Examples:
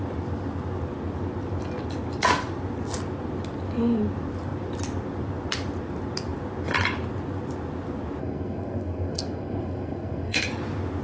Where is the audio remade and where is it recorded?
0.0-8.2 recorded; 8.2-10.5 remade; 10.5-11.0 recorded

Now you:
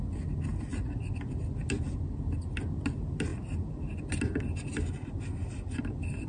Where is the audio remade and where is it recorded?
0.0-6.3 recorded

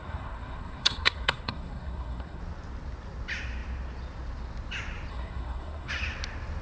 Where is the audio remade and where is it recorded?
0.0-2.4 remade; 2.4-5.1 recorded; 5.1-5.9 remade; 5.9-6.6 recorded

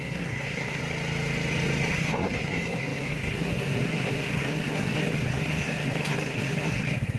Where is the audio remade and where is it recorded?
0.0-0.8 remade; 0.8-1.9 recorded; 1.9-7.2 remade

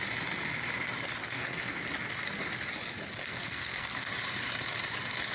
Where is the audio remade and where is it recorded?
0.0-1.2 recorded; 1.2-1.8 remade; 1.8-3.2 recorded; 3.2-4.1 remade; 4.1-5.3 recorded

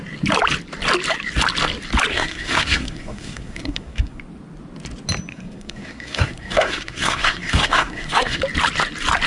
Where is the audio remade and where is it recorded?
0.0-2.1 recorded; 2.1-4.2 remade; 4.2-5.3 recorded; 5.3-8.4 remade; 8.4-9.3 recorded

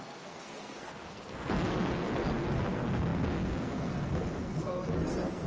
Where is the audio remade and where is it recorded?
0.0-5.5 remade

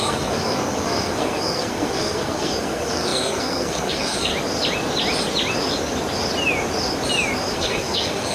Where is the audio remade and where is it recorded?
0.0-4.3 remade; 4.3-7.5 recorded; 7.5-8.3 remade